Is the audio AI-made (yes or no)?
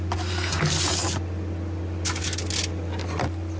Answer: no